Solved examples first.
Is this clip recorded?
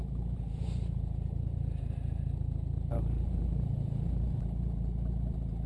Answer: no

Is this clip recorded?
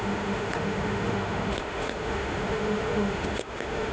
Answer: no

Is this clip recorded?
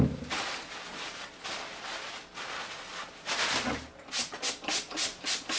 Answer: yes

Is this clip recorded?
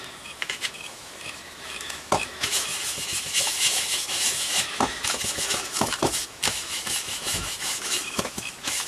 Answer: no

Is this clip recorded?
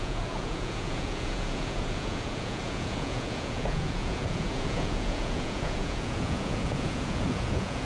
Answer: no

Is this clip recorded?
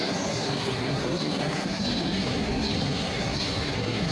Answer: no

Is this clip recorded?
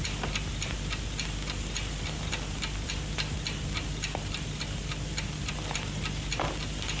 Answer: no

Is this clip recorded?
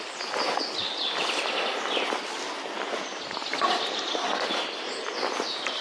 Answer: yes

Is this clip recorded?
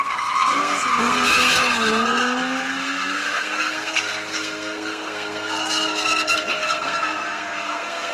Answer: no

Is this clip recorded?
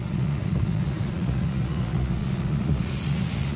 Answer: no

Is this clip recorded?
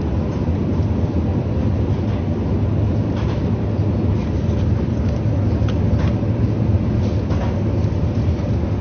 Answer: yes